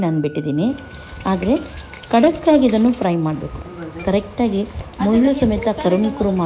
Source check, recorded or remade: remade